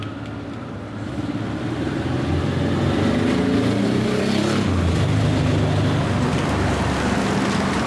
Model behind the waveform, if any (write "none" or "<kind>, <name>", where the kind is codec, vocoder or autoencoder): none